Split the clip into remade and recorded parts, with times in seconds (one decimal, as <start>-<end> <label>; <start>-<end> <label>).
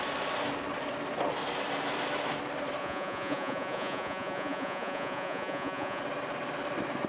0.0-2.8 recorded; 2.8-6.0 remade; 6.0-7.1 recorded